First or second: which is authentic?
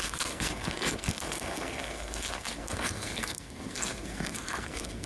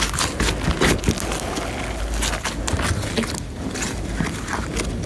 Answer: second